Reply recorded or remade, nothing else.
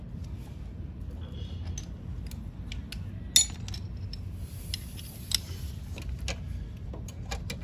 recorded